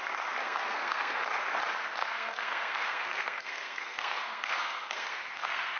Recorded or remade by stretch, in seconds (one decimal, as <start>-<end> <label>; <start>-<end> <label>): 0.0-0.4 recorded; 0.4-1.2 remade; 1.2-2.0 recorded; 2.0-5.8 remade